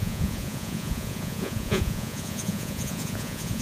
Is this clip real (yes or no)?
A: no